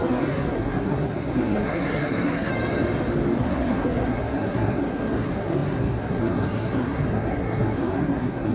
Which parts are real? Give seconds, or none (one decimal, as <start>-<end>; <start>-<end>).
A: 2.5-3.4